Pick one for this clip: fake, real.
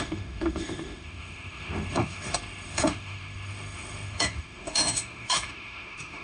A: fake